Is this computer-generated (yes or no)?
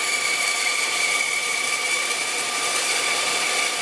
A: yes